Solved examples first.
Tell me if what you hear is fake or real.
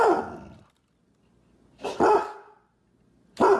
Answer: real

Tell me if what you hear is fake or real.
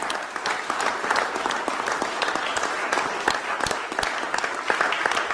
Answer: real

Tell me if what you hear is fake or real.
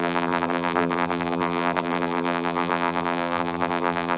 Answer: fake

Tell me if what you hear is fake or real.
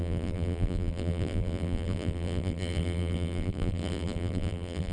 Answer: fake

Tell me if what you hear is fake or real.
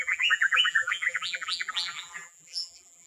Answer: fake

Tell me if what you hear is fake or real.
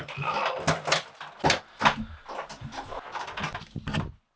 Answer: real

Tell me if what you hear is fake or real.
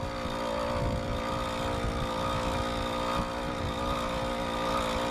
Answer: real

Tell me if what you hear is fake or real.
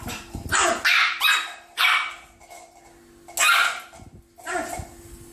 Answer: real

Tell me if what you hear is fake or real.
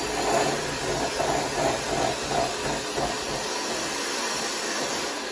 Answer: real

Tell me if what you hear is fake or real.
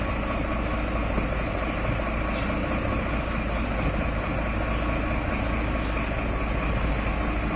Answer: real